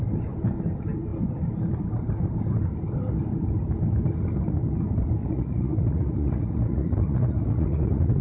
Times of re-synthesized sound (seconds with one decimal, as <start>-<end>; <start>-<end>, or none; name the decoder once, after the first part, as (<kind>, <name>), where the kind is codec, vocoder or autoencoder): 5.2-8.2 (vocoder, Vocos)